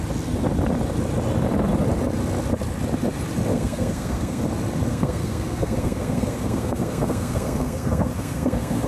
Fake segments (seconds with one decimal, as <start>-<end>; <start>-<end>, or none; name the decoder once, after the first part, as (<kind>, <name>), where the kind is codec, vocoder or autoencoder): 3.5-4.4 (codec, SNAC); 4.9-8.9